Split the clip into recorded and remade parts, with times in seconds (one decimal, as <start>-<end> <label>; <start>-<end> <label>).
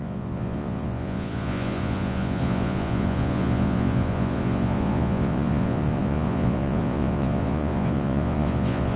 0.0-9.0 remade